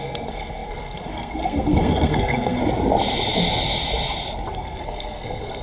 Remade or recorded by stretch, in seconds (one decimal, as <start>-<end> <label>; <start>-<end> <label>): 0.0-2.6 remade; 2.6-4.5 recorded; 4.5-5.6 remade